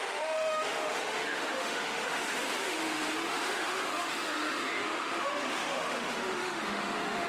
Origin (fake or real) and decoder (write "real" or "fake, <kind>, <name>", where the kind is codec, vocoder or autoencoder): fake, autoencoder, DAC-VAE